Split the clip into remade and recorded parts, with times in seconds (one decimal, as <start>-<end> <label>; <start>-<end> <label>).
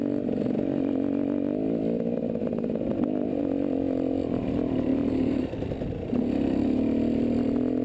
0.0-2.4 recorded; 2.4-3.4 remade; 3.4-4.9 recorded; 4.9-5.5 remade; 5.5-7.8 recorded